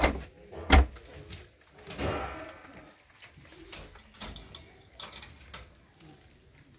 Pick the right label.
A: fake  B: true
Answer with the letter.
B